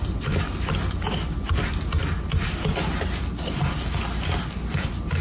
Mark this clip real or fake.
real